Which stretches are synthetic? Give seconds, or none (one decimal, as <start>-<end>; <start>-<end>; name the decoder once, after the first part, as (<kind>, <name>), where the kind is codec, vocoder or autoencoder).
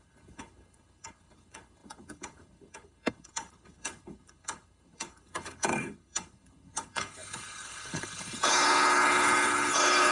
0.0-10.1 (codec, HILCodec)